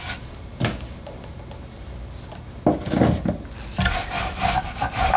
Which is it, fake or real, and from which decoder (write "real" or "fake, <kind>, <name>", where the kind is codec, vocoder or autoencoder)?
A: real